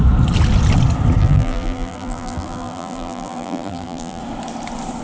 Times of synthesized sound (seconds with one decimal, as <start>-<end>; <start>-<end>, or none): 1.2-4.2